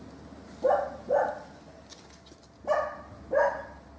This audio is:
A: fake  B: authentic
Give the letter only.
B